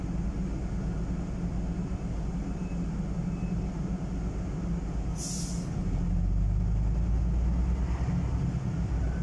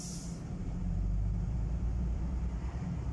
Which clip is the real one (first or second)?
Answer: first